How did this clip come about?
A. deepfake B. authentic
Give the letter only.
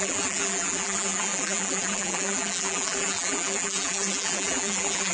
A